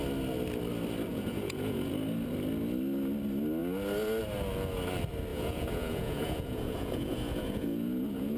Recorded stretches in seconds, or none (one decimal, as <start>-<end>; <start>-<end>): 0.0-1.1; 1.9-5.3